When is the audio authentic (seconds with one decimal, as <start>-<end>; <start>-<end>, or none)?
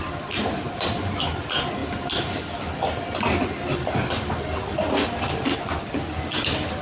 0.0-6.8